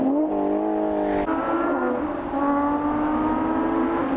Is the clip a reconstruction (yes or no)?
no